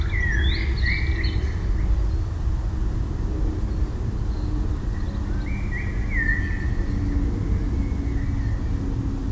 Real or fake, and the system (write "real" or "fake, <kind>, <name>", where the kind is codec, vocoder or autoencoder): real